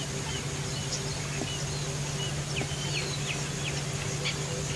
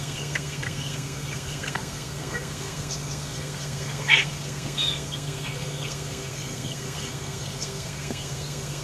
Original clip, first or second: first